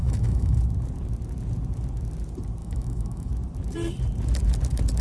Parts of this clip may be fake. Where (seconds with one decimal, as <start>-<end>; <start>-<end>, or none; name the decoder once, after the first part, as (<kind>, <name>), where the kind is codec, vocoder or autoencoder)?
0.0-0.6 (autoencoder, DAC-VAE); 2.6-3.3